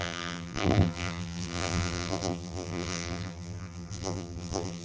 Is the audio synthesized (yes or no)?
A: yes